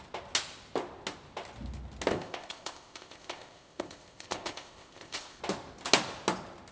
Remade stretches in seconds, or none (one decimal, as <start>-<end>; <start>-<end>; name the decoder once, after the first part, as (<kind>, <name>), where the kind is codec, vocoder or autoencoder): 2.1-5.4 (codec, ZipCodec)

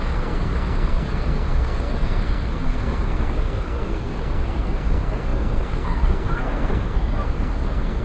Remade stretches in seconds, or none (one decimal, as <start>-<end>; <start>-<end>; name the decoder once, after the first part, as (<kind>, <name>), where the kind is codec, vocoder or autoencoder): 0.0-8.0 (codec, SNAC)

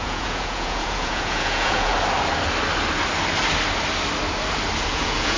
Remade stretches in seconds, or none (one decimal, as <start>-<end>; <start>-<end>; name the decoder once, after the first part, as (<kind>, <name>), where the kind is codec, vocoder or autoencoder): 0.0-1.9 (vocoder, Vocos); 4.9-5.4

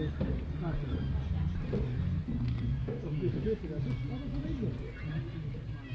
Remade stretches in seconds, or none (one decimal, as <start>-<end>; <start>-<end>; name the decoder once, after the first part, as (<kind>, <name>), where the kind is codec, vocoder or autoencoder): 2.8-3.6 (autoencoder, DAC-VAE)

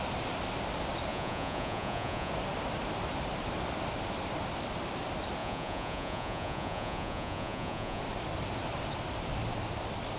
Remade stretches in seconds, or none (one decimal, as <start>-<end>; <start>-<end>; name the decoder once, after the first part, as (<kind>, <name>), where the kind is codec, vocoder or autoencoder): 1.1-2.3 (vocoder, Vocos); 5.4-8.0

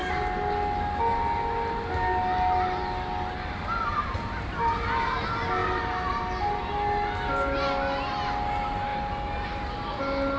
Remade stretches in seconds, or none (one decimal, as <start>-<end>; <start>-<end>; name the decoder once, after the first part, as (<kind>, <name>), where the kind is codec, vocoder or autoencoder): none

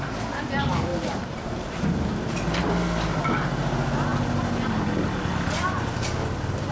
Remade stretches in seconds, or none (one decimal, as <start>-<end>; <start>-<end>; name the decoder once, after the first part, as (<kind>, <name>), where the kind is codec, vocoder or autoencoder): 0.9-2.6 (vocoder, BigVGAN v2)